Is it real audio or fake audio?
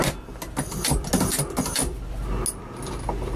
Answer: real